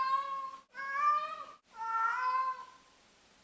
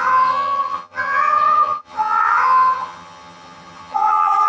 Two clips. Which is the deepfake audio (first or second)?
second